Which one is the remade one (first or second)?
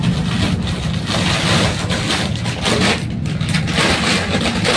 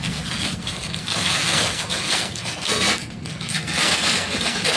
second